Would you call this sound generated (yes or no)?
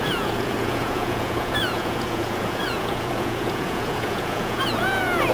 yes